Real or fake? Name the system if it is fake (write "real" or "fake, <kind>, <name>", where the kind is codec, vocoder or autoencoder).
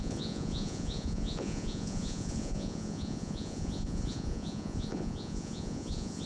fake, vocoder, Vocos